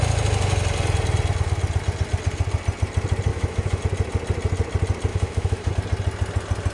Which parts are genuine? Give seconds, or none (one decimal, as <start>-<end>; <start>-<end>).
0.0-3.3; 3.8-5.1; 5.7-6.7